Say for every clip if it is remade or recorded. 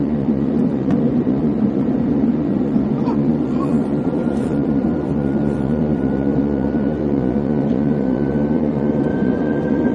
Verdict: remade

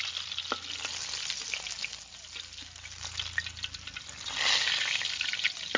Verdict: recorded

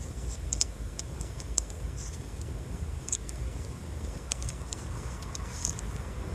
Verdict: remade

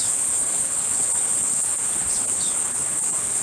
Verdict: remade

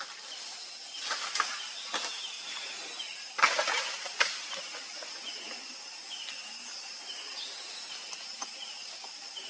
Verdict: recorded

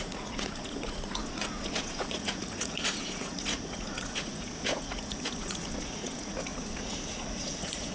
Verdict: remade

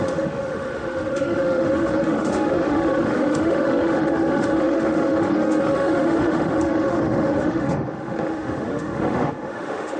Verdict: remade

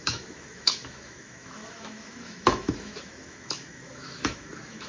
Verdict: remade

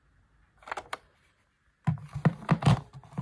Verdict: recorded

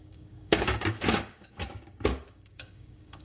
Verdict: remade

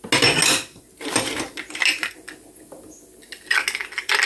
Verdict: recorded